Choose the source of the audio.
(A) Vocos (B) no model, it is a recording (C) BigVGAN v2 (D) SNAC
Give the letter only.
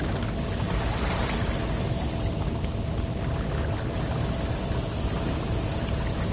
B